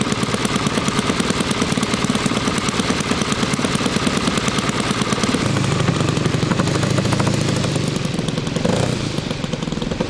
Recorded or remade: recorded